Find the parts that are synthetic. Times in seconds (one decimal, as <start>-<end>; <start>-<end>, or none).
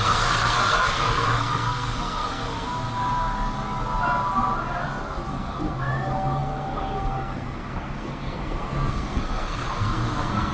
0.0-2.7; 5.3-10.5